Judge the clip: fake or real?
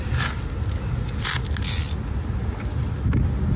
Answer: real